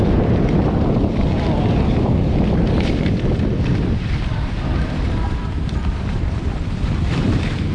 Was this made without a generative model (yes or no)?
no